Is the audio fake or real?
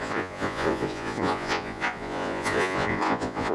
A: fake